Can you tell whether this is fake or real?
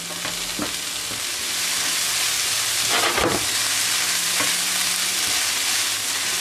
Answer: real